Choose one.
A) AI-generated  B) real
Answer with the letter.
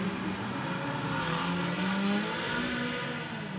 B